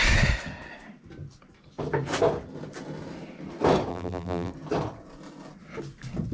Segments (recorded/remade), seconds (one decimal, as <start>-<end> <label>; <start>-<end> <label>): 0.0-3.9 recorded; 3.9-4.5 remade; 4.5-6.3 recorded